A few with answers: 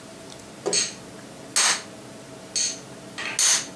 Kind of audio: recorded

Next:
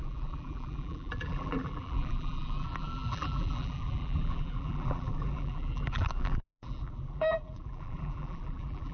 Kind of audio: remade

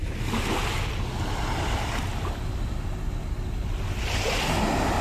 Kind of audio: recorded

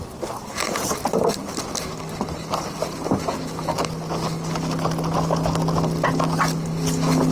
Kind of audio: recorded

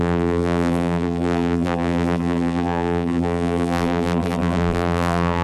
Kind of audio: remade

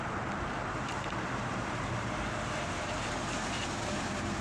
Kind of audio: remade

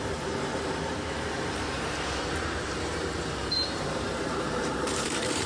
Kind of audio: remade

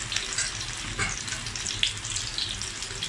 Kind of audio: recorded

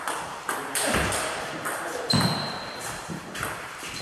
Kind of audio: remade